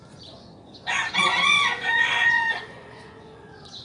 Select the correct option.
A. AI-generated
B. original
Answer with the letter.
A